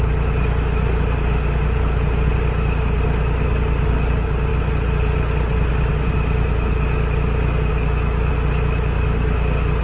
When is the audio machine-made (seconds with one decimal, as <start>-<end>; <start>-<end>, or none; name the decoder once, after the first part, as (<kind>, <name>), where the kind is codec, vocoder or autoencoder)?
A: 7.7-8.3 (autoencoder, DAC-VAE)